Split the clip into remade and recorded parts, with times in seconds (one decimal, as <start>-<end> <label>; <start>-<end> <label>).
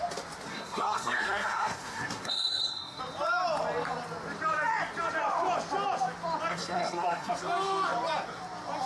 0.0-0.5 recorded; 0.5-3.0 remade; 3.0-6.5 recorded; 6.5-7.3 remade; 7.3-8.9 recorded